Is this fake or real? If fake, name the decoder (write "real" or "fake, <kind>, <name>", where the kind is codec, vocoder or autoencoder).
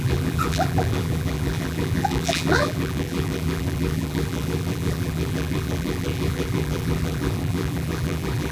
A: fake, vocoder, BigVGAN v2